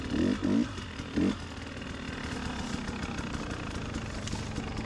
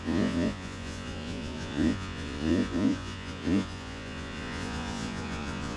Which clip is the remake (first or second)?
second